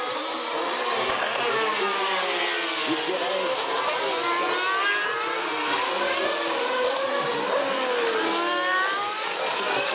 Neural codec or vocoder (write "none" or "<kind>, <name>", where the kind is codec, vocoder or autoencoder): none